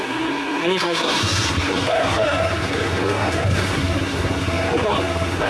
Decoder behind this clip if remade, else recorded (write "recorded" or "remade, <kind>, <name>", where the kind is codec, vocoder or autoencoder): remade, codec, SNAC